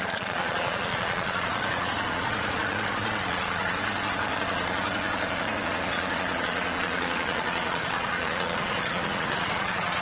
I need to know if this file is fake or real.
fake